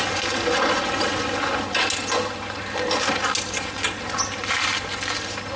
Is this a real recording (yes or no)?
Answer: yes